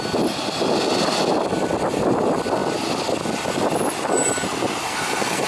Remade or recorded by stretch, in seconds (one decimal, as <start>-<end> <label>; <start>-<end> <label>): 0.0-4.8 recorded; 4.8-5.5 remade